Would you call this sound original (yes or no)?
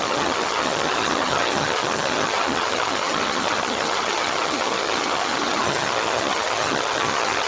no